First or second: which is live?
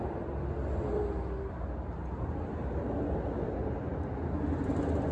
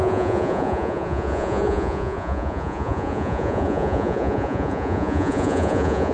first